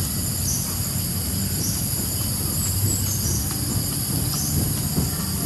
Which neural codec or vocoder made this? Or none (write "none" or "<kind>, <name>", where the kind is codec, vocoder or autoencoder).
none